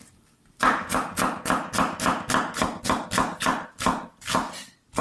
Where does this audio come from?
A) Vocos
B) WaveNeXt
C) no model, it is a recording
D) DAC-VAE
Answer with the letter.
C